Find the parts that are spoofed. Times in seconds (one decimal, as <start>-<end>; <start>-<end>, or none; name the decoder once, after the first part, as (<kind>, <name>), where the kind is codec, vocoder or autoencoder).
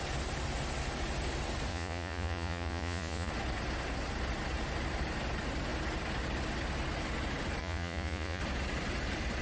1.7-3.3 (vocoder, Vocos); 7.6-8.4